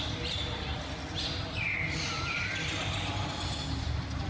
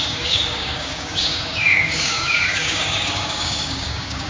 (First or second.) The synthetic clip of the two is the second